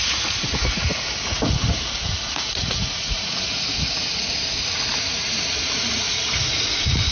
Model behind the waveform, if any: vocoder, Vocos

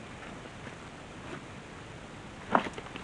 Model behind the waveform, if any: none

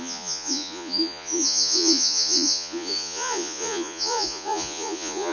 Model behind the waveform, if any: vocoder, Vocos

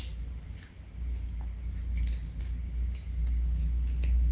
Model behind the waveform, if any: none